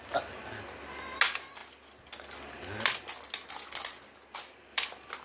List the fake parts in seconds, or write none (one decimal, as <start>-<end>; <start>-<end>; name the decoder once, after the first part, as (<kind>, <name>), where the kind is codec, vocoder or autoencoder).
none